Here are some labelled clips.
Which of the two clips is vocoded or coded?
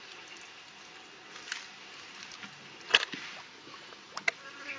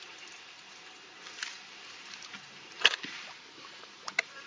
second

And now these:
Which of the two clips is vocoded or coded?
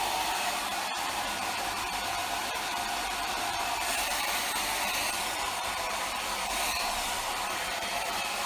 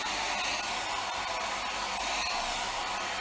first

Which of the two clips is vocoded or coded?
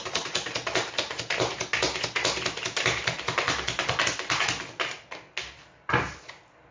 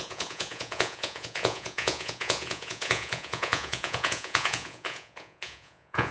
second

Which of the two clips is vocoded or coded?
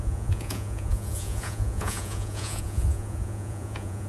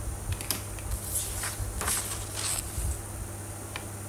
first